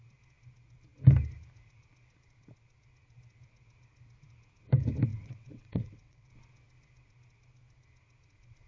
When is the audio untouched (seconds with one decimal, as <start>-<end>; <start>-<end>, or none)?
0.0-5.1; 6.3-8.7